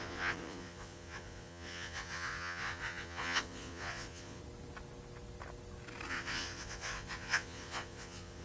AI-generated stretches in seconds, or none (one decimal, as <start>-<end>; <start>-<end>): 0.0-4.4; 6.1-8.4